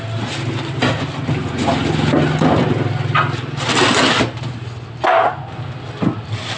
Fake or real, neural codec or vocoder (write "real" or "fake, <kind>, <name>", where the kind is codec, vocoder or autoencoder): real